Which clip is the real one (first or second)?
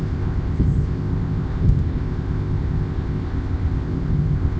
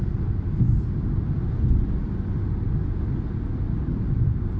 second